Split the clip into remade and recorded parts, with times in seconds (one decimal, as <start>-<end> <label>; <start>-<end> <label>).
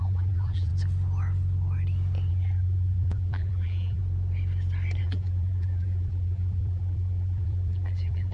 0.0-0.7 remade; 0.7-2.3 recorded; 2.3-4.0 remade; 4.0-5.0 recorded; 5.0-8.3 remade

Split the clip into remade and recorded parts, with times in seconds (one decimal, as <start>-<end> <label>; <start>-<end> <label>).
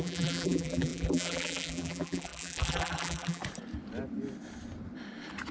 0.0-3.4 remade; 3.4-5.5 recorded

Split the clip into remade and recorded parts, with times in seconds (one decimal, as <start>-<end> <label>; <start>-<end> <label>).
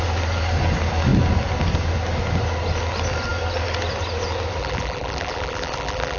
0.0-4.6 recorded; 4.6-6.2 remade